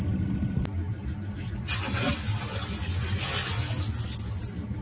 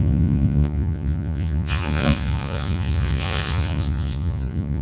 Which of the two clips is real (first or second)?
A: first